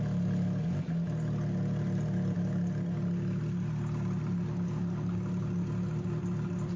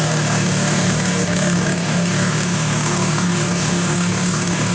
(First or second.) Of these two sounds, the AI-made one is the second